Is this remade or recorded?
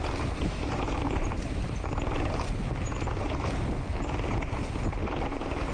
recorded